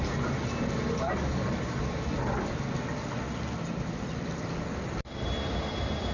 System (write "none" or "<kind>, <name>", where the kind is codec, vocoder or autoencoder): none